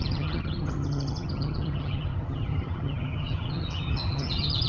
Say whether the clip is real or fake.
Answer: fake